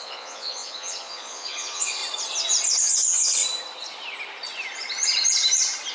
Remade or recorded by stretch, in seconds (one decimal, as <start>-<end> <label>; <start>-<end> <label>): 0.0-2.0 remade; 2.0-2.8 recorded; 2.8-3.4 remade; 3.4-5.9 recorded